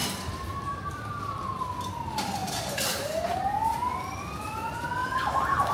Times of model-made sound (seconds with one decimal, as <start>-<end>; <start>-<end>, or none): 2.4-3.8; 5.0-5.7